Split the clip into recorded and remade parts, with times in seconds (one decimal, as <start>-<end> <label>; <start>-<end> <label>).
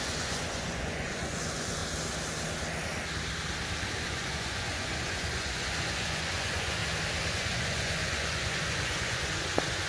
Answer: 0.0-1.8 remade; 1.8-4.0 recorded; 4.0-6.8 remade; 6.8-7.3 recorded; 7.3-9.9 remade